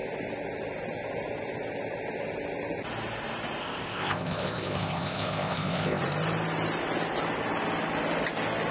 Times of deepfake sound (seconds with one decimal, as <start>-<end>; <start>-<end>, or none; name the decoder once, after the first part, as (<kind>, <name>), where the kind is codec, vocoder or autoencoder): 3.6-6.0 (codec, ZipCodec)